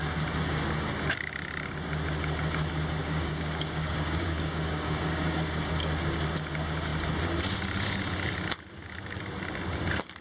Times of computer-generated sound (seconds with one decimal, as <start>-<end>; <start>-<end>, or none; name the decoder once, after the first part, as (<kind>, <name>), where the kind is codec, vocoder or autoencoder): 3.0-5.7 (codec, DAC)